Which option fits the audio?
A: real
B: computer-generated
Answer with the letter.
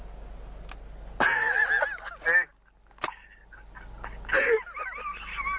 A